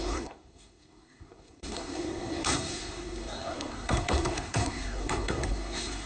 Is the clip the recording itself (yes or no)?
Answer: no